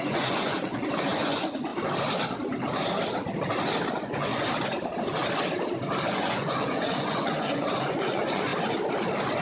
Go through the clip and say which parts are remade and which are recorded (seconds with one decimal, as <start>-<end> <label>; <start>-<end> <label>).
0.0-1.7 remade; 1.7-3.9 recorded; 3.9-4.3 remade; 4.3-6.1 recorded; 6.1-8.5 remade; 8.5-9.4 recorded